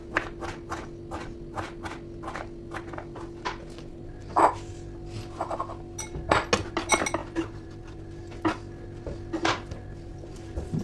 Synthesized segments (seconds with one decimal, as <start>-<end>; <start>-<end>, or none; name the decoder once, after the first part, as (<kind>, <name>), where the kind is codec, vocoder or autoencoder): 7.2-8.1 (vocoder, BigVGAN v2); 10.1-10.8